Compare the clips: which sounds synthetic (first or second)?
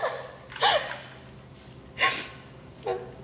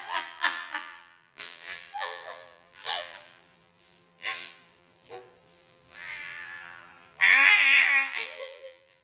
second